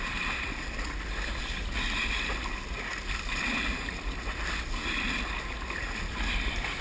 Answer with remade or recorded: recorded